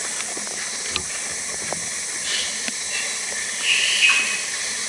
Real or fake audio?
real